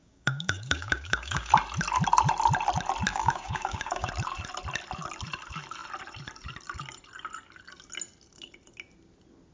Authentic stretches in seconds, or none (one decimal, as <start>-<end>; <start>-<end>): 1.5-3.1; 4.1-9.5